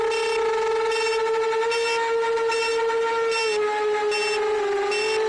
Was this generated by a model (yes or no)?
no